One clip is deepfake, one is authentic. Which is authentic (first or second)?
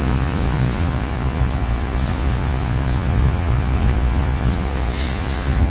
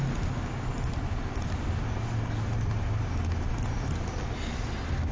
second